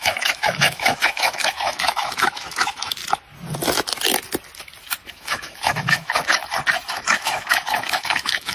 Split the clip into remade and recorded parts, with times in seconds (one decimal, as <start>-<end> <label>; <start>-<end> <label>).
0.0-3.0 remade; 3.0-5.1 recorded; 5.1-6.4 remade; 6.4-6.9 recorded; 6.9-8.5 remade